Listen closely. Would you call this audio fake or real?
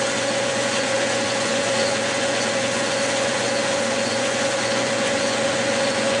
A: fake